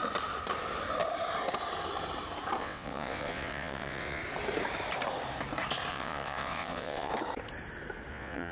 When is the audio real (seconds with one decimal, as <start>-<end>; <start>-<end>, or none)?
0.0-2.6; 4.2-5.9; 7.1-8.1